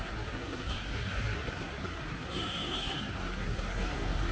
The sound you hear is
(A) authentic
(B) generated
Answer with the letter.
B